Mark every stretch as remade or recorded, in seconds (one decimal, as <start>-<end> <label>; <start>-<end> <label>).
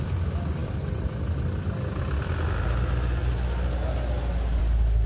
0.0-5.1 recorded